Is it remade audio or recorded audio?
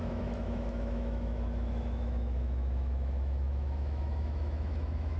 remade